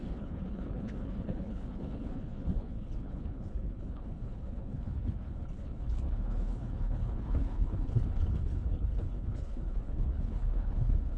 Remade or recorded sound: remade